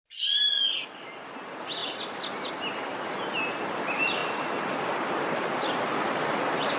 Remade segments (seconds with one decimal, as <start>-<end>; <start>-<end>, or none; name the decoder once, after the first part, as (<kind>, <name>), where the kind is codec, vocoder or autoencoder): none